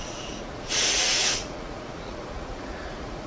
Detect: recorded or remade remade